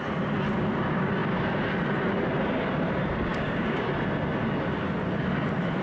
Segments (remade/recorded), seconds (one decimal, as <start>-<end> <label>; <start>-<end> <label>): 0.0-3.3 recorded; 3.3-3.9 remade; 3.9-5.8 recorded